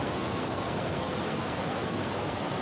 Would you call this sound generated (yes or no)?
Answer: yes